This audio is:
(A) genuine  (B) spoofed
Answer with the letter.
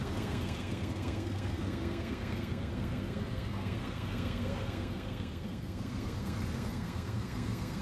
B